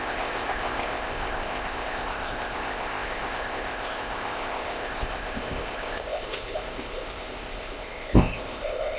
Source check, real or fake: fake